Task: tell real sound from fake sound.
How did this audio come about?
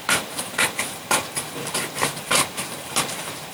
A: fake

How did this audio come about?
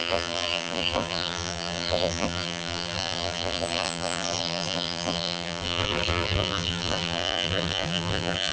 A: fake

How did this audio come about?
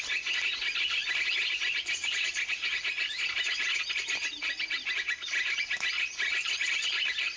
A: fake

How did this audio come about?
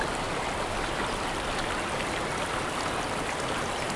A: real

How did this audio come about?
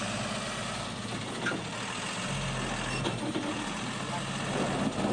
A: real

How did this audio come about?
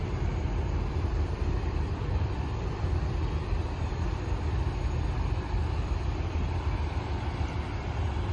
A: fake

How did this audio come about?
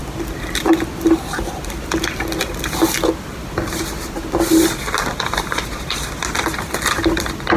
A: real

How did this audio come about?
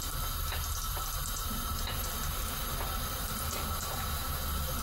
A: real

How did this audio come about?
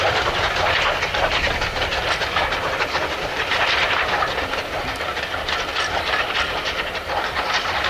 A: real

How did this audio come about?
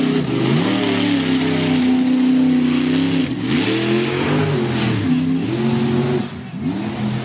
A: real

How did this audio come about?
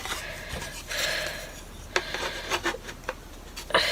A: real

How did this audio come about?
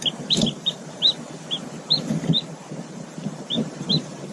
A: fake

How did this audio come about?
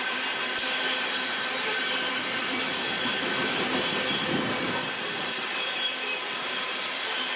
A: fake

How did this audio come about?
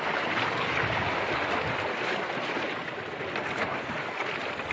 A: real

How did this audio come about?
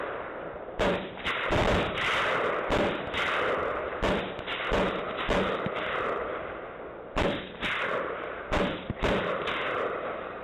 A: fake